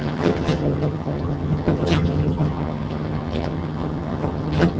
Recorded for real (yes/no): no